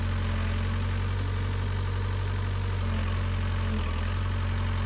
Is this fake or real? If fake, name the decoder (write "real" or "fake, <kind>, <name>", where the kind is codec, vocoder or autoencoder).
real